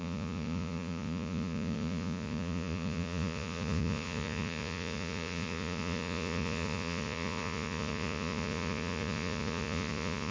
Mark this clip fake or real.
fake